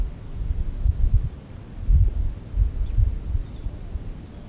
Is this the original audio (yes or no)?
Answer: yes